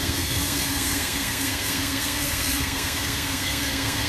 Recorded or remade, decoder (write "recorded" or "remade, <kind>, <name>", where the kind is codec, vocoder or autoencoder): remade, codec, SNAC